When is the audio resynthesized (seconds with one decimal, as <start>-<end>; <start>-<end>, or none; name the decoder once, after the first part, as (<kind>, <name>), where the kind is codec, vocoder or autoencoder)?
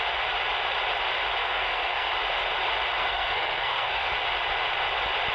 1.4-2.1 (codec, SNAC); 3.0-4.1